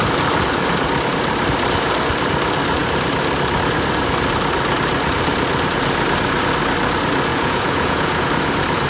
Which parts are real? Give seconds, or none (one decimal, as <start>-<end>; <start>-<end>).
0.0-7.3; 8.2-8.9